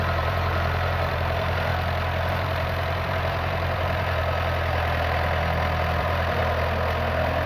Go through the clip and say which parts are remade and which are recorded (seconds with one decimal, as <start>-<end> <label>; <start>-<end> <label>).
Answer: 0.0-1.7 remade; 1.7-2.3 recorded; 2.3-4.2 remade; 4.2-6.0 recorded; 6.0-6.4 remade; 6.4-7.5 recorded